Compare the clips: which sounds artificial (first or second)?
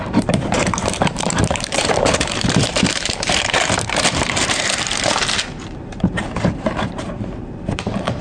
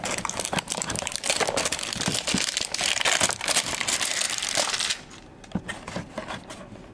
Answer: first